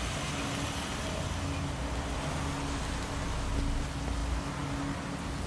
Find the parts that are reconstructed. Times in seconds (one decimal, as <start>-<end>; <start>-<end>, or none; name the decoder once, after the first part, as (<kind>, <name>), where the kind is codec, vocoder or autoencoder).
1.8-2.4 (vocoder, BigVGAN v2)